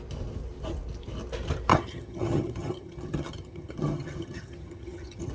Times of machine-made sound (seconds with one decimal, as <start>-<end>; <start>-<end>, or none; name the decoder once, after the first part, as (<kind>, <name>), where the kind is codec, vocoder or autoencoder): 1.7-5.3 (vocoder, HiFi-GAN)